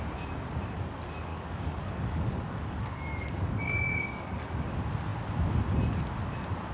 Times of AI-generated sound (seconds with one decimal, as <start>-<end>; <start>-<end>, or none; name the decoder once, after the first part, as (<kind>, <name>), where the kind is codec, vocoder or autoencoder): 1.3-4.4 (codec, DAC)